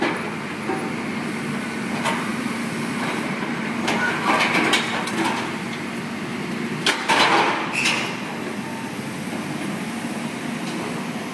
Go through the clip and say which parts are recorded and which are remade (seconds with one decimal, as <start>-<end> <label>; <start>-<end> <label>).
0.0-2.3 recorded; 2.3-5.0 remade; 5.0-11.3 recorded